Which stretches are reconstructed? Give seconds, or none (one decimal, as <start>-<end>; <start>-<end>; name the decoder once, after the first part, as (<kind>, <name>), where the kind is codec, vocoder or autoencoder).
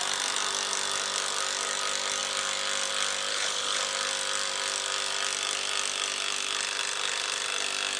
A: 3.3-3.8 (codec, HILCodec)